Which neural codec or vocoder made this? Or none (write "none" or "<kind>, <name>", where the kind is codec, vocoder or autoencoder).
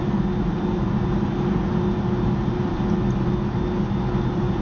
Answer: none